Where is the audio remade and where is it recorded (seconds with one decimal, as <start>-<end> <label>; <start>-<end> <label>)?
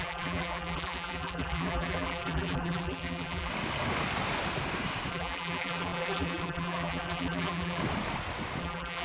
0.0-3.5 remade; 3.5-5.1 recorded; 5.1-7.8 remade; 7.8-8.6 recorded; 8.6-9.0 remade